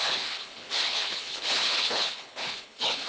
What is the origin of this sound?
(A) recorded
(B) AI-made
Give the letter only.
B